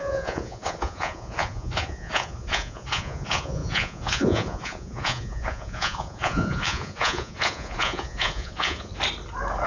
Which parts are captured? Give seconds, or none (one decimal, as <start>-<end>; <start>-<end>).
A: 8.9-9.7